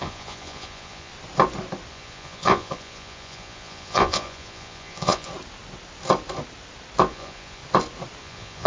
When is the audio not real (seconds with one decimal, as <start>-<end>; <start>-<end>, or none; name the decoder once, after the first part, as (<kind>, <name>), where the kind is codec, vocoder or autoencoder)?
0.0-1.1 (vocoder, Vocos); 1.9-5.3; 7.1-7.6; 8.2-8.7